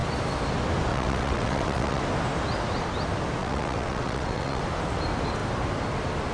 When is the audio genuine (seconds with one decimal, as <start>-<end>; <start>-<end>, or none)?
0.0-0.9; 2.0-3.4; 4.6-6.3